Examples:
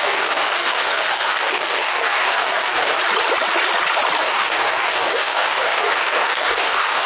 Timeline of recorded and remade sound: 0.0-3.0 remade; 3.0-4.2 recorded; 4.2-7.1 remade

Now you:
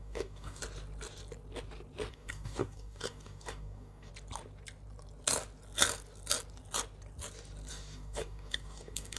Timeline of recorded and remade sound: 0.0-0.6 remade; 0.6-2.1 recorded; 2.1-4.1 remade; 4.1-7.7 recorded; 7.7-9.2 remade

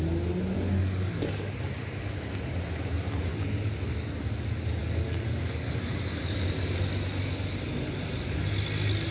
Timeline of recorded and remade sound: 0.0-0.8 recorded; 0.8-1.6 remade; 1.6-3.3 recorded; 3.3-3.8 remade; 3.8-4.8 recorded; 4.8-5.8 remade; 5.8-9.1 recorded

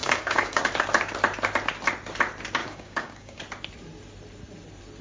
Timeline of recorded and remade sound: 0.0-0.6 remade; 0.6-2.6 recorded; 2.6-3.4 remade; 3.4-5.0 recorded

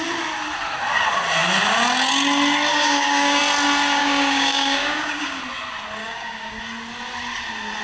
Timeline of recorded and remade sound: 0.0-2.7 recorded; 2.7-3.4 remade; 3.4-4.0 recorded; 4.0-5.4 remade; 5.4-6.0 recorded; 6.0-6.6 remade; 6.6-7.8 recorded